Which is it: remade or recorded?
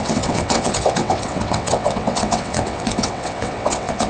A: remade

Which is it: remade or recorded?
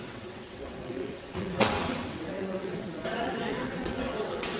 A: remade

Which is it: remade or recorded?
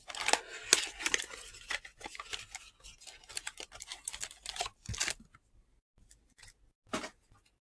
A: recorded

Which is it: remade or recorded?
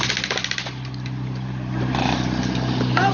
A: recorded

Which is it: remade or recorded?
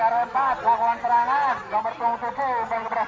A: recorded